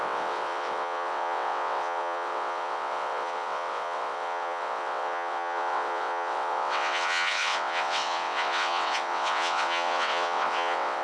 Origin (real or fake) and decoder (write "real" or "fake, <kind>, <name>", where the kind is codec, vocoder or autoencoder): fake, vocoder, WaveNeXt